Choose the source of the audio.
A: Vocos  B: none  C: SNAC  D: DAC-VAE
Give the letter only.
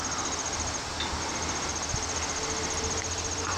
B